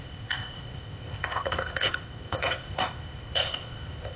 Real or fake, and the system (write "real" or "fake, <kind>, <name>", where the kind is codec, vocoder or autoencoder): fake, codec, ZipCodec